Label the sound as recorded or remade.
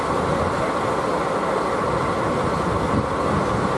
recorded